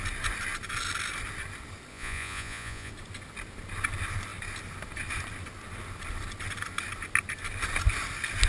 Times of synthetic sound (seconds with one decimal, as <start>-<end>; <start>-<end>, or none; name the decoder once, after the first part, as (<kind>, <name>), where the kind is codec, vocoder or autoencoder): 1.9-2.9 (vocoder, Vocos)